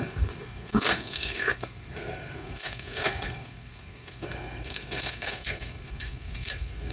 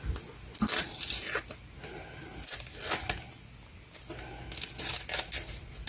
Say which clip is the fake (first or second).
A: first